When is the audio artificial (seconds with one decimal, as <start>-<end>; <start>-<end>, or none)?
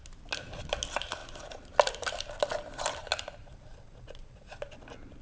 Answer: 3.4-4.8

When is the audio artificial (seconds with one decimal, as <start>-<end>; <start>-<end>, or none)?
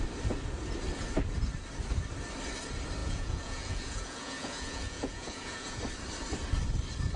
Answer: 3.0-5.8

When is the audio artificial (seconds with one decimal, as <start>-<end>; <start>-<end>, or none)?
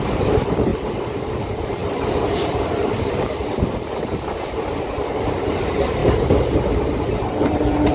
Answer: 0.0-0.7; 1.4-7.9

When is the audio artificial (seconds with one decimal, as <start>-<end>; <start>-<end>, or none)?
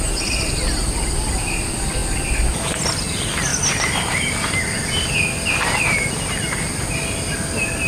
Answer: none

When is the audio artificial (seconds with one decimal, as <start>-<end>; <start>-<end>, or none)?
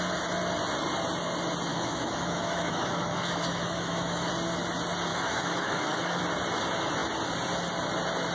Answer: 1.7-4.3; 5.1-6.2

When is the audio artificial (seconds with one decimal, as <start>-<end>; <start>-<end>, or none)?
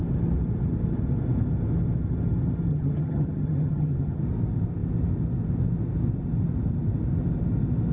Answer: 2.7-4.2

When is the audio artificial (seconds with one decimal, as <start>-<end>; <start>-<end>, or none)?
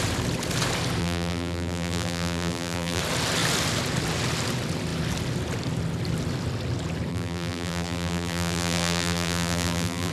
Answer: 1.0-3.0; 7.1-10.1